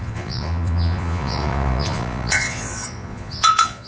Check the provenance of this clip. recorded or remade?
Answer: remade